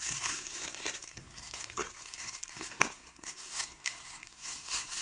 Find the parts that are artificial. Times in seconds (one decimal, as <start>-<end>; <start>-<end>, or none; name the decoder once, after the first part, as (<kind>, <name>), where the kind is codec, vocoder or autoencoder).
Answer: 0.0-5.0 (codec, SNAC)